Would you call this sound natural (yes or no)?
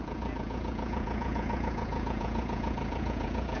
no